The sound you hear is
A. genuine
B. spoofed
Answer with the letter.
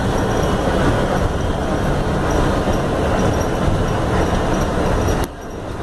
A